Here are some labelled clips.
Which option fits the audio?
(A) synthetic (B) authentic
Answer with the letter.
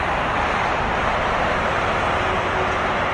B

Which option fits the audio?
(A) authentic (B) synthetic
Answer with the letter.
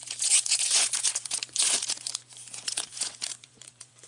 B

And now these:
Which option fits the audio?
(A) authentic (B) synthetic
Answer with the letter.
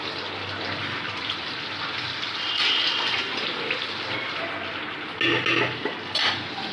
A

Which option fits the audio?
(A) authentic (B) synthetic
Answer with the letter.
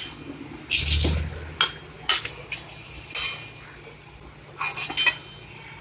A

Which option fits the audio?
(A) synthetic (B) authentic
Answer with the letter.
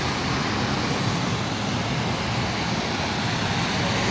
B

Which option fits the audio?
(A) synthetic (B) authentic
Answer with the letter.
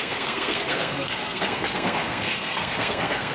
A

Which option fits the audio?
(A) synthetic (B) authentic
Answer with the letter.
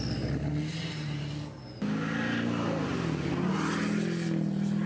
B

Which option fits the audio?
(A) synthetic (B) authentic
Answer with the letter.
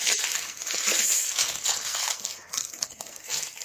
A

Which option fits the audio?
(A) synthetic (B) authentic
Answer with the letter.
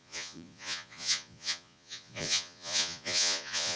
A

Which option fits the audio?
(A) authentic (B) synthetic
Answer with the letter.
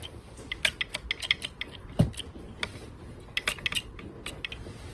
A